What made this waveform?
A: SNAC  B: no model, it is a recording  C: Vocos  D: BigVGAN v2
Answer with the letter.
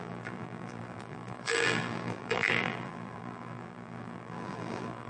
D